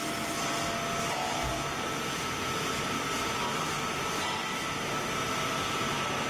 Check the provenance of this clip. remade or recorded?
recorded